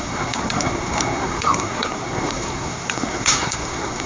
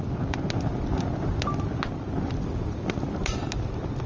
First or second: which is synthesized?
first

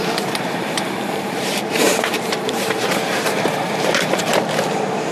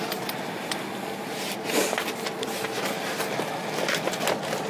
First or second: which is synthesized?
first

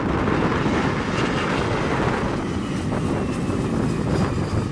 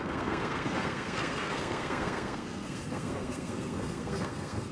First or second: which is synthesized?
second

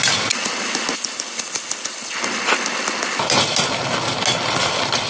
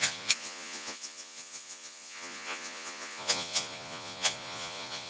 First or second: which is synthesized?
second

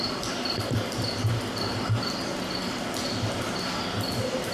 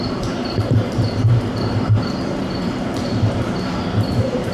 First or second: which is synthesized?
second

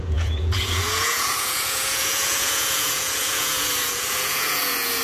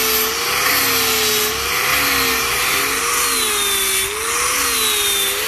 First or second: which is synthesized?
first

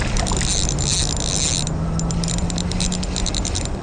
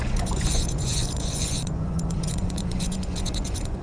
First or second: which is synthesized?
second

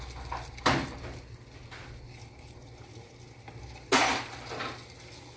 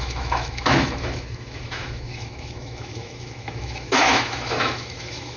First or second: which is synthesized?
second